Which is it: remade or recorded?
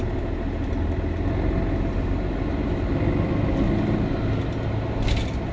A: recorded